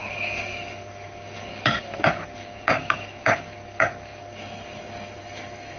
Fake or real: fake